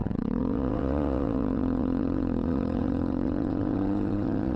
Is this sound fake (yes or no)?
yes